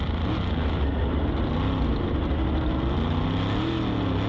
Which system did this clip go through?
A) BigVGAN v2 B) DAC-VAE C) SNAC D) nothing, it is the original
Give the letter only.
D